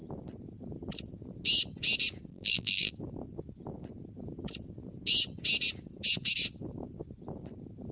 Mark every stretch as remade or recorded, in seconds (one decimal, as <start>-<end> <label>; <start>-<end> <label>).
0.0-2.3 recorded; 2.3-2.9 remade; 2.9-7.9 recorded